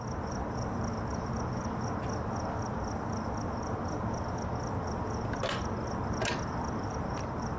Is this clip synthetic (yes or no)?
no